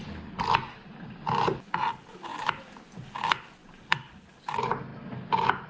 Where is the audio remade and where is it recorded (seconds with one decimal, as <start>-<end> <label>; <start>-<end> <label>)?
0.0-2.3 recorded; 2.3-3.0 remade; 3.0-5.7 recorded